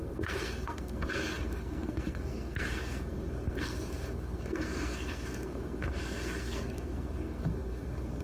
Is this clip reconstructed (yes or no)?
yes